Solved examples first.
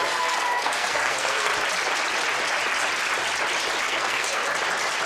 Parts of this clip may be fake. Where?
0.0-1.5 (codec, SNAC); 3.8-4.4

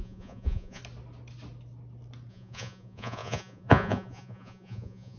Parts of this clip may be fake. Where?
0.0-0.8 (vocoder, Vocos); 2.3-5.2

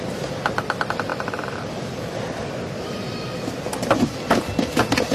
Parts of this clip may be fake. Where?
1.1-3.2 (vocoder, BigVGAN v2)

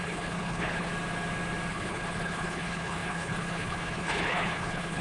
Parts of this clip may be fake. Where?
0.0-0.9 (codec, HILCodec); 1.7-5.0

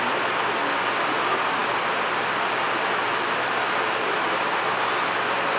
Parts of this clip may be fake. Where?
none